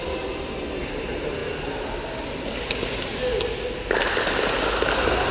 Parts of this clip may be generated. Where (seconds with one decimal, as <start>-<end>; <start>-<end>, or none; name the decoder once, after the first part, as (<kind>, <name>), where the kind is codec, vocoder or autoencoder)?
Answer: none